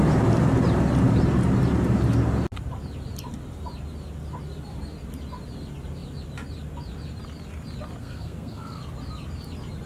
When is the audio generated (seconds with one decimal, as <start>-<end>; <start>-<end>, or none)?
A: 8.0-8.8